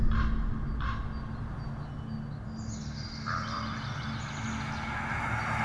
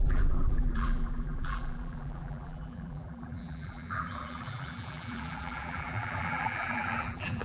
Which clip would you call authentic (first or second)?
first